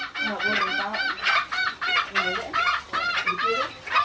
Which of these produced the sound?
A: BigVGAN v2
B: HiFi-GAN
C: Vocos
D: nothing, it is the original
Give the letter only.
D